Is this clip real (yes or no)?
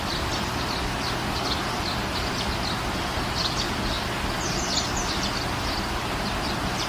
yes